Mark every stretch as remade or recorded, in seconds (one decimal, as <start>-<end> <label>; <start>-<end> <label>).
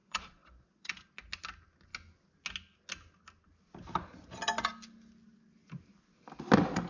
0.0-1.0 remade; 1.0-6.9 recorded